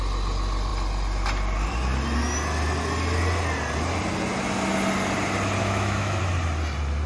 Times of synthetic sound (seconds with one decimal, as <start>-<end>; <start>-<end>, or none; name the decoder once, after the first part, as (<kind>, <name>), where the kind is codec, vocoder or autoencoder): 5.6-6.2 (autoencoder, DAC-VAE)